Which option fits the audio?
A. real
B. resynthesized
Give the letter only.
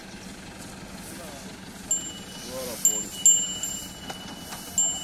A